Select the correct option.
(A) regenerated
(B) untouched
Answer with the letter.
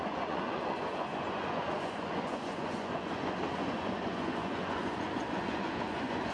A